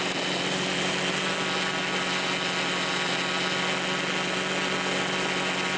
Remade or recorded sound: recorded